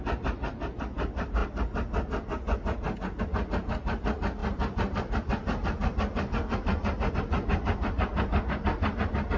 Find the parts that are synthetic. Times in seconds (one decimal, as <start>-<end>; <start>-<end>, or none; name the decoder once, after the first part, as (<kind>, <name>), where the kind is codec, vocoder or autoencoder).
none